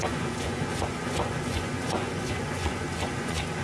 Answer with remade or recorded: remade